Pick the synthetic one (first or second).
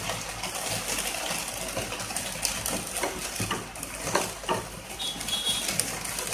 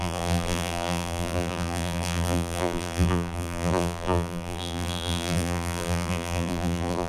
second